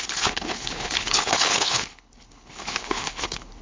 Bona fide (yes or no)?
no